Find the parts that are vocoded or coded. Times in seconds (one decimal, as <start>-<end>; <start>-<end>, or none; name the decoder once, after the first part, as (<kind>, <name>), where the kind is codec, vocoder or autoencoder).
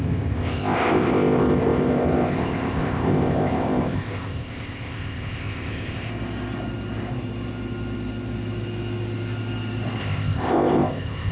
0.0-6.1 (codec, ZipCodec); 10.0-11.3